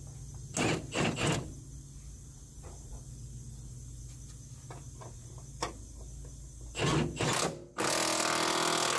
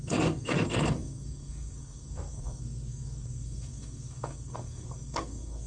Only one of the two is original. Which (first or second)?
first